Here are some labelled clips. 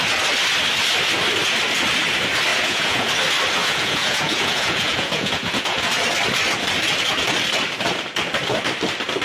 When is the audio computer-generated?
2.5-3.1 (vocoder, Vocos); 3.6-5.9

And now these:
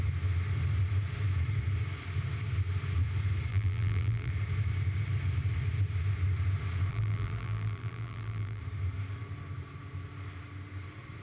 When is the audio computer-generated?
3.5-4.3 (vocoder, BigVGAN v2); 6.9-8.6

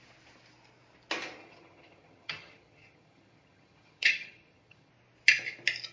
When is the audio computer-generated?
1.4-4.9 (vocoder, HiFi-GAN)

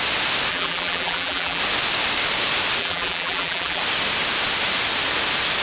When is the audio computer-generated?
0.5-1.6 (vocoder, BigVGAN v2); 2.8-3.8